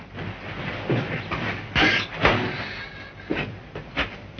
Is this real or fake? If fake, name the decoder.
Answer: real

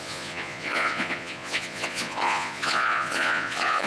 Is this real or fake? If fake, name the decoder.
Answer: fake, vocoder, Vocos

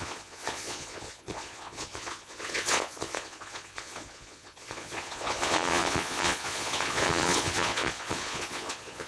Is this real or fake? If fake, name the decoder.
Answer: fake, vocoder, Vocos